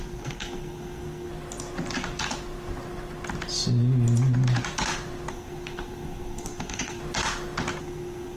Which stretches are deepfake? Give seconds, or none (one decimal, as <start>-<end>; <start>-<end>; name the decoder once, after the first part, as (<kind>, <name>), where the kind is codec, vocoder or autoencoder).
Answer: 0.0-1.3 (codec, SNAC); 5.3-7.0; 7.8-8.4